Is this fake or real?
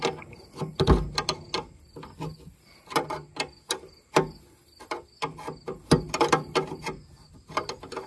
real